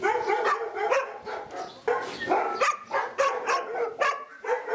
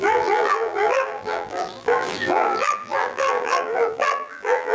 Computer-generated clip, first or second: second